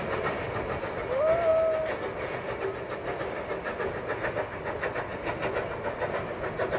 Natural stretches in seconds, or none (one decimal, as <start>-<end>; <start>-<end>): 0.0-6.8